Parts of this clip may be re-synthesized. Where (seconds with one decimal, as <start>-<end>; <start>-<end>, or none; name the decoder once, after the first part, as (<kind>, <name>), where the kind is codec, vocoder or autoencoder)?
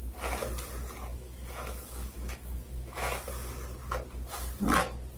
1.1-3.3 (autoencoder, DAC-VAE)